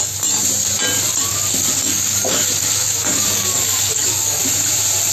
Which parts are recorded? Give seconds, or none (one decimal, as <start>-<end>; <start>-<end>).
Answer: 0.0-1.3; 4.4-5.1